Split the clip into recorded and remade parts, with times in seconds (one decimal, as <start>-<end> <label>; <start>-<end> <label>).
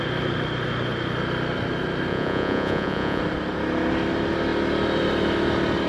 0.0-2.1 recorded; 2.1-3.2 remade; 3.2-5.9 recorded